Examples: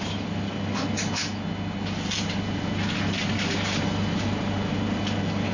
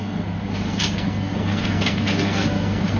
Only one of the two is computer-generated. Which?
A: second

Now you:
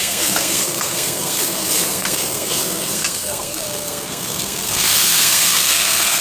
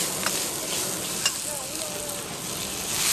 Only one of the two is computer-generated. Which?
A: first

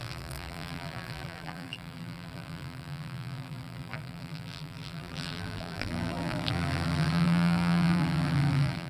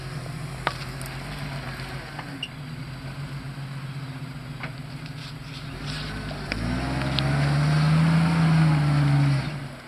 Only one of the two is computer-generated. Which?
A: first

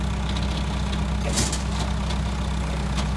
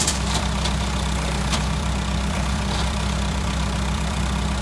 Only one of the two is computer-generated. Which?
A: second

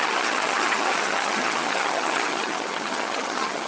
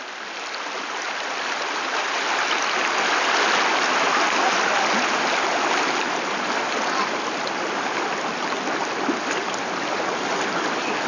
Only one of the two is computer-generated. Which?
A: first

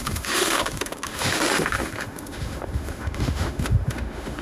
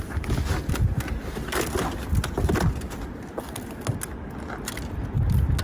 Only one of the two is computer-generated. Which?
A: first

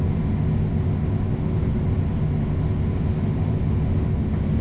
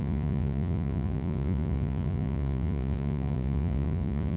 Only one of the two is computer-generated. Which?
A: second